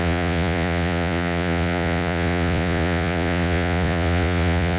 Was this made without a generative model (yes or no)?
no